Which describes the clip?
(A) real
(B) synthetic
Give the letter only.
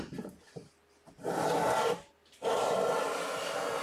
A